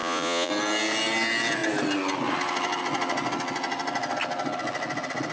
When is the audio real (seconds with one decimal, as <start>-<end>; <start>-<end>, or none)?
0.5-5.3

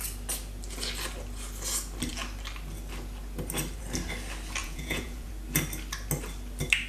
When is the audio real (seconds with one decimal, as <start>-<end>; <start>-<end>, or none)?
0.0-4.6; 5.3-6.9

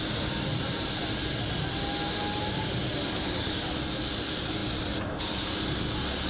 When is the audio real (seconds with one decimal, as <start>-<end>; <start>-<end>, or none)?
0.0-6.3

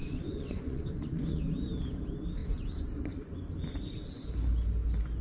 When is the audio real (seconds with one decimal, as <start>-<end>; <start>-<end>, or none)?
1.4-2.4; 3.3-5.2